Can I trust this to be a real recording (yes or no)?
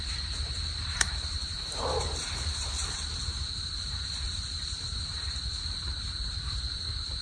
no